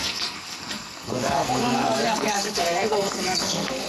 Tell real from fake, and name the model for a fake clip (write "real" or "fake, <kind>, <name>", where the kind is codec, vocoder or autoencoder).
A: fake, codec, SNAC